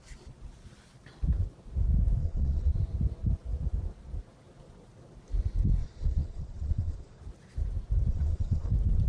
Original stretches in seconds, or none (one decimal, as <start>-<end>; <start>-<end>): 0.0-2.2; 2.7-5.8; 7.2-8.1; 8.7-9.1